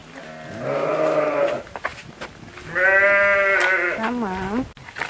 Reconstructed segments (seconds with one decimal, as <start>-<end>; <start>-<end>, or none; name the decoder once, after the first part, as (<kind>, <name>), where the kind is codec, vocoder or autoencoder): none